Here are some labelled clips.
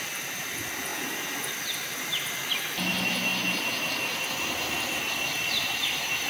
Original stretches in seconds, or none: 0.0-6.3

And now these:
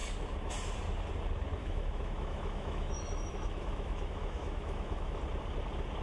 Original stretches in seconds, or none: 0.0-1.6; 5.2-6.0

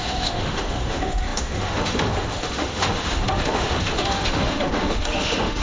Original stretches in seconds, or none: none

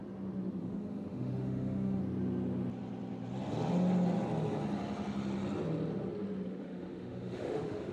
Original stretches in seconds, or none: 0.0-0.6; 2.0-6.5

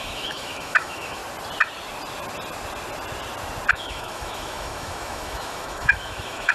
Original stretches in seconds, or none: 1.2-3.7

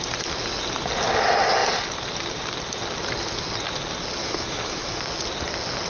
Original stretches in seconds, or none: 0.0-4.2; 5.0-5.9

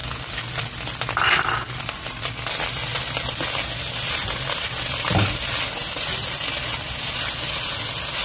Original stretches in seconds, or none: 0.0-8.2